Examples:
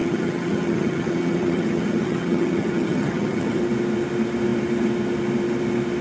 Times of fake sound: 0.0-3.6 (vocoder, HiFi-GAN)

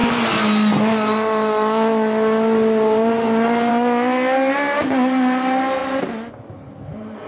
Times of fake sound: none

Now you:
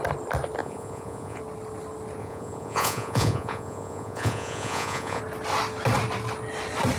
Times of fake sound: 0.6-1.4 (vocoder, Vocos); 2.2-5.2